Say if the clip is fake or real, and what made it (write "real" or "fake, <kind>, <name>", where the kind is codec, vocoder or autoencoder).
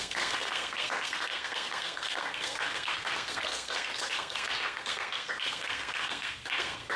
fake, codec, SNAC